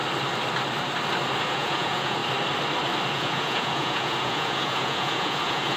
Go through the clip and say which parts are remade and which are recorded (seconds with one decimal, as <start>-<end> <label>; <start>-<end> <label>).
0.0-1.4 recorded; 1.4-2.2 remade; 2.2-3.1 recorded; 3.1-5.8 remade